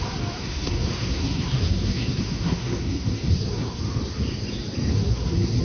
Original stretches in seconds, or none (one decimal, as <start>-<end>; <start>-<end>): 0.0-0.4; 3.8-4.9